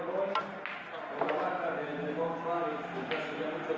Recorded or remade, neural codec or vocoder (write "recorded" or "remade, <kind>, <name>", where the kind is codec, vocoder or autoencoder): recorded